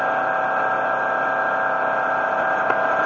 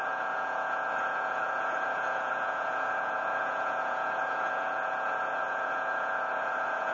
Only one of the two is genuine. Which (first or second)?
first